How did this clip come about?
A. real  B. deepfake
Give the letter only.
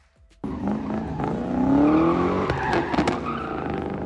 A